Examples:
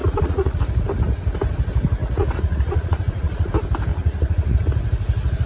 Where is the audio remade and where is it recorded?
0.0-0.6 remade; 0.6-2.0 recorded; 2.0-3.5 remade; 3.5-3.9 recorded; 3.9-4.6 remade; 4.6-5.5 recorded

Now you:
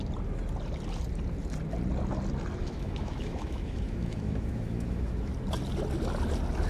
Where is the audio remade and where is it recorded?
0.0-2.6 recorded; 2.6-5.3 remade; 5.3-6.7 recorded

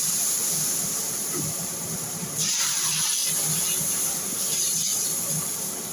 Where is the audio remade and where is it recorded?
0.0-3.2 remade; 3.2-3.8 recorded; 3.8-4.9 remade; 4.9-5.9 recorded